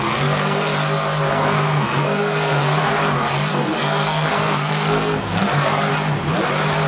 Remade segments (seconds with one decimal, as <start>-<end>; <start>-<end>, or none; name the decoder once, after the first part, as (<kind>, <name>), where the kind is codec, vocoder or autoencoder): 0.0-0.7 (codec, SNAC); 1.3-2.9; 3.5-5.9